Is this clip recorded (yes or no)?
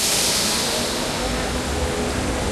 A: yes